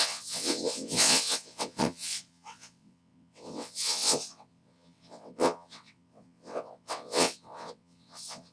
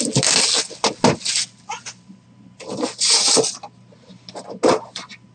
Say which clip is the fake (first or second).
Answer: first